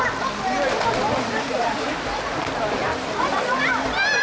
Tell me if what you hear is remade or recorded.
recorded